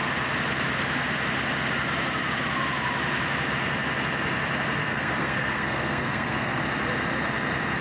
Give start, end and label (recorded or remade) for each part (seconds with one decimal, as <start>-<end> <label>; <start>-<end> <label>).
0.0-4.8 recorded; 4.8-6.6 remade; 6.6-7.8 recorded